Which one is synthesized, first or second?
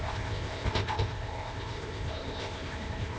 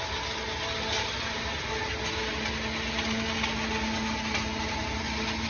first